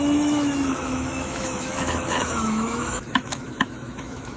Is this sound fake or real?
fake